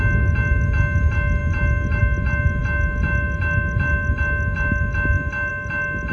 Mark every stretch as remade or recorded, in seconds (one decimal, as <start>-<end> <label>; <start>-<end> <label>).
0.0-6.1 recorded